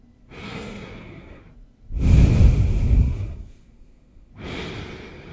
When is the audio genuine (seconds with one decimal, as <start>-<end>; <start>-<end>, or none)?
0.0-0.4; 1.4-2.9; 4.3-5.3